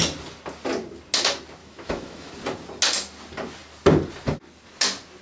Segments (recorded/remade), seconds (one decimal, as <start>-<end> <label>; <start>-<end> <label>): 0.0-1.6 recorded; 1.6-2.3 remade; 2.3-5.2 recorded

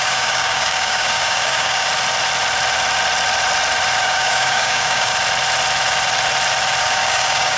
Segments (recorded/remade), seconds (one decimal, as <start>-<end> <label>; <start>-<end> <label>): 0.0-1.9 remade; 1.9-4.0 recorded; 4.0-5.1 remade; 5.1-6.8 recorded; 6.8-7.6 remade

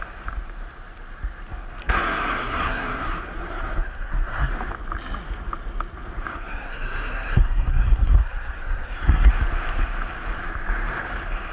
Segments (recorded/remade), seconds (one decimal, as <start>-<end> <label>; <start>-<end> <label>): 0.0-1.8 recorded; 1.8-4.5 remade; 4.5-6.3 recorded; 6.3-9.3 remade; 9.3-11.5 recorded

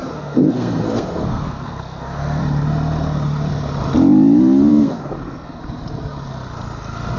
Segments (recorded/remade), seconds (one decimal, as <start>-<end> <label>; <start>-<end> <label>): 0.0-2.4 remade; 2.4-4.7 recorded; 4.7-5.6 remade; 5.6-7.2 recorded

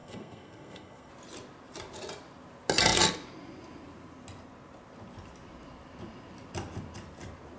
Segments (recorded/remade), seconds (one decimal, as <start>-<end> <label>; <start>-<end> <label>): 0.0-1.1 remade; 1.1-7.6 recorded

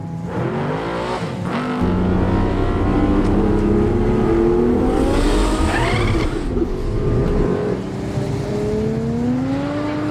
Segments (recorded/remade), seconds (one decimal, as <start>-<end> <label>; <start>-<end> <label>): 0.0-0.6 remade; 0.6-7.2 recorded; 7.2-7.8 remade; 7.8-10.1 recorded

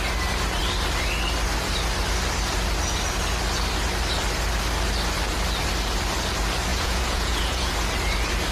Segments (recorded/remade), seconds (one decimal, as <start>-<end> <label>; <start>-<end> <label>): 0.0-6.7 recorded; 6.7-7.7 remade; 7.7-8.5 recorded